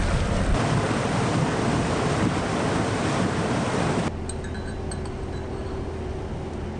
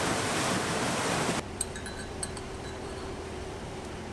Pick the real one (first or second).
first